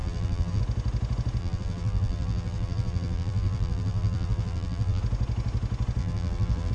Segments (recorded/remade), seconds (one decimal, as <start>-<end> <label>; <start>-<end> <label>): 0.0-0.6 remade; 0.6-1.4 recorded; 1.4-5.0 remade; 5.0-6.0 recorded; 6.0-6.7 remade